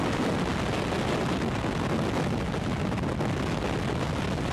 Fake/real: real